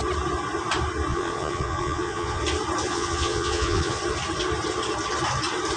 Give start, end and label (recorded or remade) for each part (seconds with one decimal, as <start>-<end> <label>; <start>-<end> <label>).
0.0-1.1 recorded; 1.1-2.4 remade; 2.4-2.9 recorded; 2.9-4.0 remade; 4.0-5.8 recorded